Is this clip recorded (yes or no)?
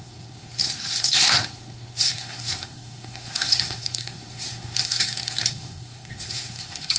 no